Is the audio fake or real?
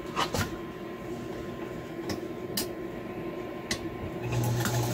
real